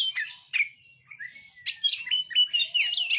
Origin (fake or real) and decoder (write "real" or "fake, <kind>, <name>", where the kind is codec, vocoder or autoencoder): real